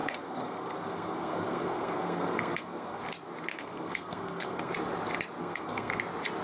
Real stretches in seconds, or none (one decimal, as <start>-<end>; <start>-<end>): 3.0-3.5; 4.7-5.4; 6.0-6.4